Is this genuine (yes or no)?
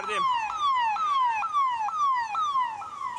yes